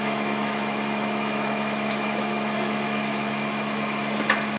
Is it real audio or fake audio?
fake